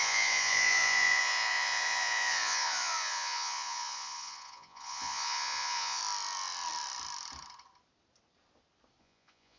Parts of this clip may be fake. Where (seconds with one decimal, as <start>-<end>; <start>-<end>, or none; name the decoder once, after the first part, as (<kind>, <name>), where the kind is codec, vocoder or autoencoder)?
0.0-6.0 (vocoder, Vocos); 9.0-9.6

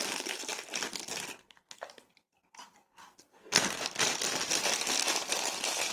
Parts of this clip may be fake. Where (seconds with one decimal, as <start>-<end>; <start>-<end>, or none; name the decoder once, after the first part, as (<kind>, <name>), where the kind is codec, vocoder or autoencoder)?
1.4-1.9 (codec, SNAC); 2.9-3.8

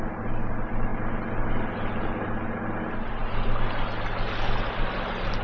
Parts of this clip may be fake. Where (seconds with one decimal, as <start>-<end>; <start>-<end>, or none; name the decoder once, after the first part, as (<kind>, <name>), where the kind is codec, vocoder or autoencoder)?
none

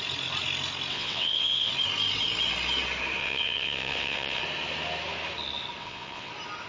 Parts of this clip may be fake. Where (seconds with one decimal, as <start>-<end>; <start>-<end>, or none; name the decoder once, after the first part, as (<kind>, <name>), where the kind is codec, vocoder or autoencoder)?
0.9-1.7 (vocoder, WaveNeXt); 3.2-4.4; 5.8-6.3

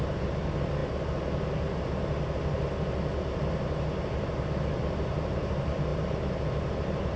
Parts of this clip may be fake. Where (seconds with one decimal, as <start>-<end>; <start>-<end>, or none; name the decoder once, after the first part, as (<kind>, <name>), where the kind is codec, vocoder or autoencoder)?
none

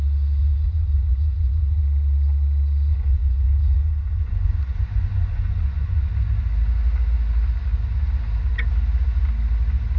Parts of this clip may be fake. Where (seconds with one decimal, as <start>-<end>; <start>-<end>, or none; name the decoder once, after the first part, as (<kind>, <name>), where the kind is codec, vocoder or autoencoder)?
0.4-1.8 (vocoder, Vocos); 2.9-6.1

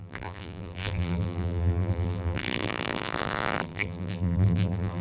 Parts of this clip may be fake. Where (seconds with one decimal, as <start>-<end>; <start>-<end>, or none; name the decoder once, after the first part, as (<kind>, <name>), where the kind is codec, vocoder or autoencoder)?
0.0-5.0 (vocoder, BigVGAN v2)